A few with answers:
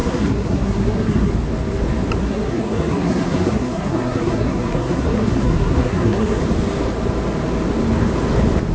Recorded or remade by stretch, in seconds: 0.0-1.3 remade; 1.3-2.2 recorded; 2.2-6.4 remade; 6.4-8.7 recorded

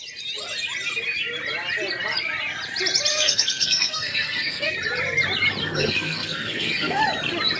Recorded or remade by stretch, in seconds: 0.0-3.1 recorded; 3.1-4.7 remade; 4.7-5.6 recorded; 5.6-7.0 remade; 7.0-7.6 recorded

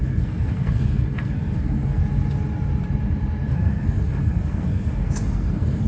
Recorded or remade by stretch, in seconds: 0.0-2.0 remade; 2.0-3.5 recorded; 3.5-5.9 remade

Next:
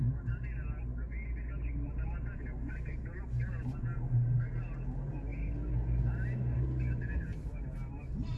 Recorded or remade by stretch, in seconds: 0.0-8.4 recorded